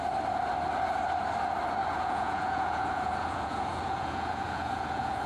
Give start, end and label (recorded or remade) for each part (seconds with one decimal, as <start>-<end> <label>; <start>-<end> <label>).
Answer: 0.0-1.8 recorded; 1.8-5.3 remade